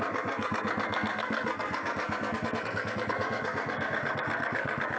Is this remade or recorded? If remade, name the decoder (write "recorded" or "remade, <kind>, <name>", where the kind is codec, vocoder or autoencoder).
remade, codec, SNAC